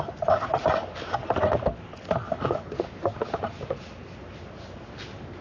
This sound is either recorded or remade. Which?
recorded